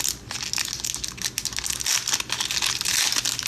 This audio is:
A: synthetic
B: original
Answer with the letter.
B